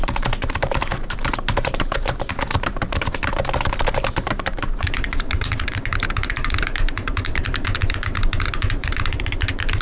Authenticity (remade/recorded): remade